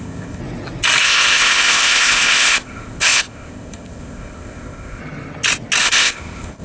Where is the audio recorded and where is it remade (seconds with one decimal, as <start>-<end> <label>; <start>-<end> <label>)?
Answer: 0.0-0.4 remade; 0.4-1.0 recorded; 1.0-5.0 remade; 5.0-5.8 recorded; 5.8-6.6 remade